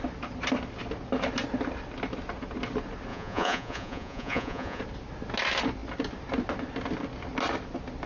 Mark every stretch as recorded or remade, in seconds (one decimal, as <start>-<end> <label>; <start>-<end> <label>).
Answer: 0.0-3.1 recorded; 3.1-4.8 remade; 4.8-8.1 recorded